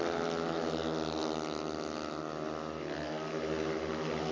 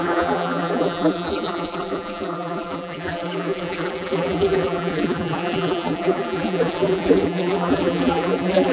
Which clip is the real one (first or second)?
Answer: first